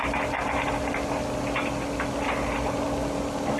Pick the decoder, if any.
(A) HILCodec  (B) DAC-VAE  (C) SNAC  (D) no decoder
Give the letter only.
D